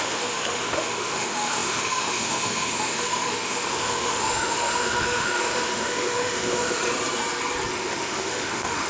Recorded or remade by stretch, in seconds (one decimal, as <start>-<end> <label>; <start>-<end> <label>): 0.0-6.8 remade; 6.8-7.7 recorded; 7.7-8.9 remade